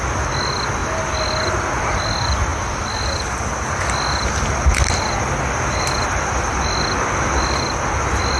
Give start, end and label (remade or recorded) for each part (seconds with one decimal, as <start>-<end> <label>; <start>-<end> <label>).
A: 0.0-8.4 recorded